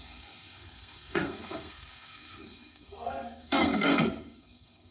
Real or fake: fake